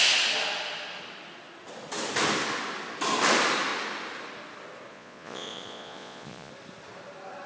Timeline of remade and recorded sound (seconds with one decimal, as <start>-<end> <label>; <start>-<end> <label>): 0.0-4.9 recorded; 4.9-6.5 remade; 6.5-7.5 recorded